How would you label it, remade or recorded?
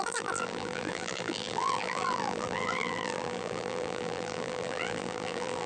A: remade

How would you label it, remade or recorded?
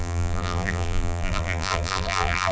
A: remade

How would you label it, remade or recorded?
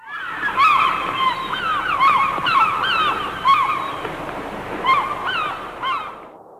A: remade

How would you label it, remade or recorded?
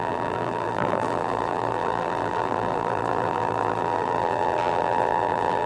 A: remade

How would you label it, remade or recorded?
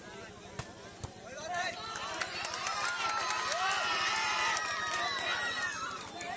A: remade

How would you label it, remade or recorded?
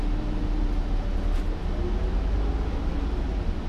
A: recorded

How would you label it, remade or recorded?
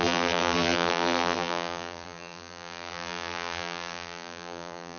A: remade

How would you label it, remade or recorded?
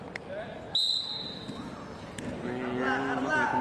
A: recorded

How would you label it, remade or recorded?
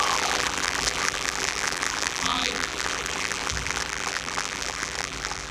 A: remade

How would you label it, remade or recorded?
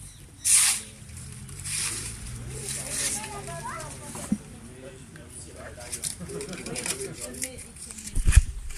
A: remade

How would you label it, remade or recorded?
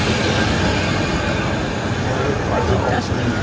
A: recorded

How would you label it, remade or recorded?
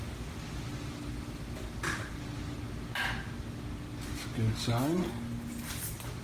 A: recorded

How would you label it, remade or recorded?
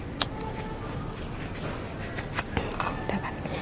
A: recorded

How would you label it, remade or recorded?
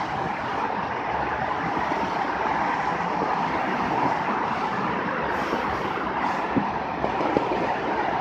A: remade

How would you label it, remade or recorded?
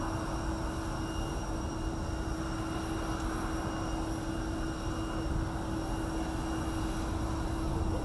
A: recorded